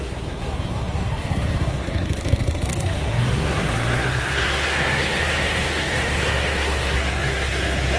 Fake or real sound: fake